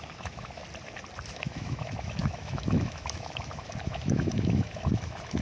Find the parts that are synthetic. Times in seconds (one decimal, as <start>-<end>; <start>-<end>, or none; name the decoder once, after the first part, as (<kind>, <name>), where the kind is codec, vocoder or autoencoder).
0.0-0.6 (autoencoder, DAC-VAE); 1.3-5.4